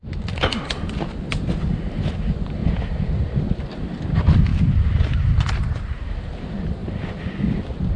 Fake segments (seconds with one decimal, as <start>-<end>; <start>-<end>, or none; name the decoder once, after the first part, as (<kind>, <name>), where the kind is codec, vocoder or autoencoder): 0.0-6.8 (vocoder, BigVGAN v2); 7.4-8.0